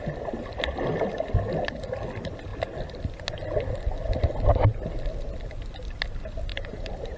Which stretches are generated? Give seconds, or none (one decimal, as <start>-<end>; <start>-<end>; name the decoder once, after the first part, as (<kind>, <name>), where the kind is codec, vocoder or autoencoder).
6.5-7.2 (vocoder, BigVGAN v2)